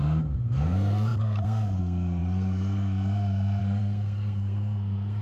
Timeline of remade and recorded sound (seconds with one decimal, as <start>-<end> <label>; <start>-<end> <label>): 0.0-5.2 remade